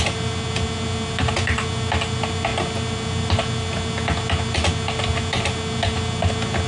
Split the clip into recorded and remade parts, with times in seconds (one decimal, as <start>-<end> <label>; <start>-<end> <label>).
0.0-6.7 recorded